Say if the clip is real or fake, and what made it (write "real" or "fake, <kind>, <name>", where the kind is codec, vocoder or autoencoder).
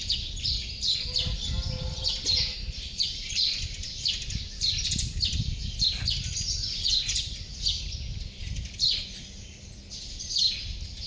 real